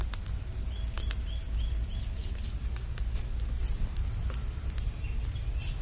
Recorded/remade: recorded